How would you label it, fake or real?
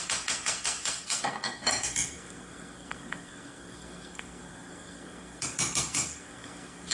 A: fake